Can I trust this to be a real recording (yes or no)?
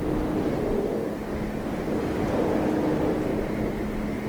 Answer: yes